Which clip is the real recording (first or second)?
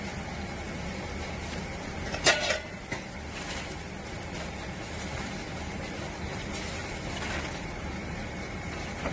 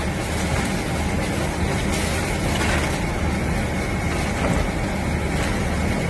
second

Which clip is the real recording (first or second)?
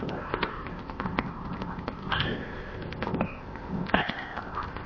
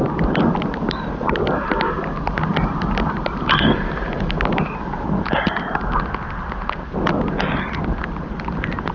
second